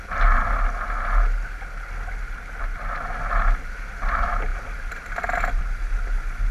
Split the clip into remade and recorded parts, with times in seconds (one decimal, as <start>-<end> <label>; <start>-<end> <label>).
0.0-6.5 recorded